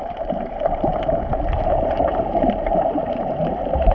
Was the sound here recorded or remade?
remade